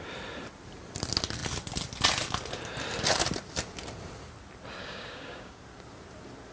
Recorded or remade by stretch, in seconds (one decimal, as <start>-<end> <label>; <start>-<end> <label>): 0.0-4.8 recorded; 4.8-5.6 remade; 5.6-6.5 recorded